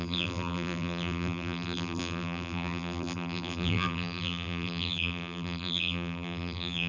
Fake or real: fake